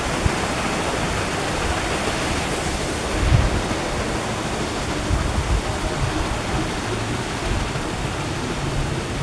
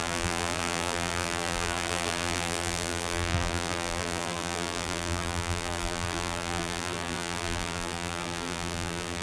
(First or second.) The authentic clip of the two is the first